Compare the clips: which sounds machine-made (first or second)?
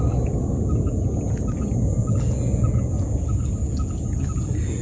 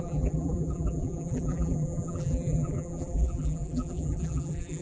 second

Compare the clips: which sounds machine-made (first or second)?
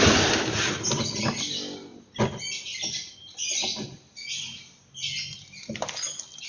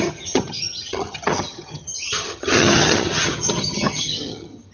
second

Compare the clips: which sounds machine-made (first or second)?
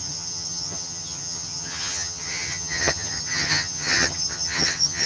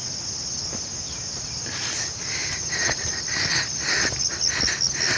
first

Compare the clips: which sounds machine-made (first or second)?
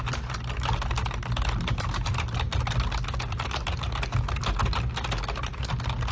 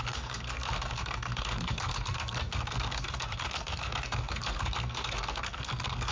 second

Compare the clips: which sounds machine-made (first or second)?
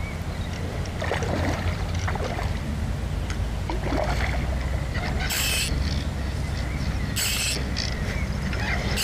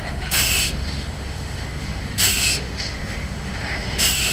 second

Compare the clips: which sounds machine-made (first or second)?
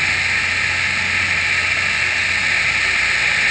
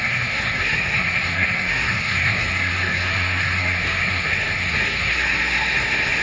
second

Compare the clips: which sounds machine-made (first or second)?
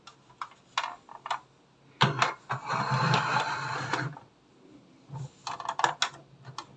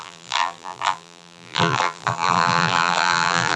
second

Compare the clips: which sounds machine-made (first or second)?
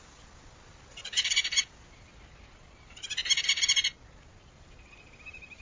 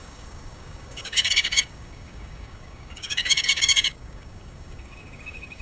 second